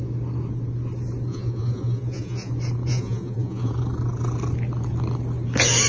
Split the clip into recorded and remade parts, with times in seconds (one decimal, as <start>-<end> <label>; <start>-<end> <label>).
0.0-1.3 recorded; 1.3-2.5 remade; 2.5-2.9 recorded; 2.9-3.7 remade; 3.7-5.9 recorded